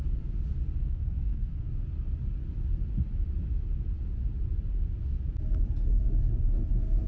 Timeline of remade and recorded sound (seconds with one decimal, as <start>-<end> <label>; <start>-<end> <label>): 0.0-0.8 recorded; 0.8-1.7 remade; 1.7-7.1 recorded